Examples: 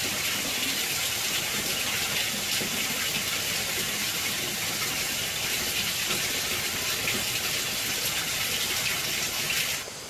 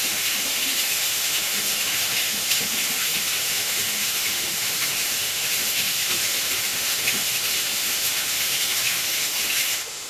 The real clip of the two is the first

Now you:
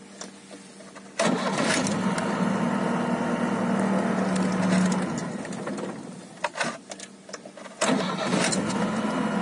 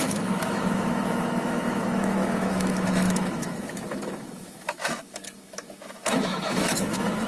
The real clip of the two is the first